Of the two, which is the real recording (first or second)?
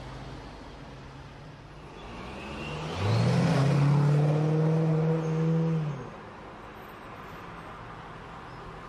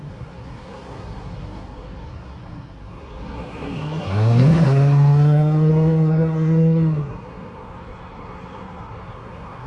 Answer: first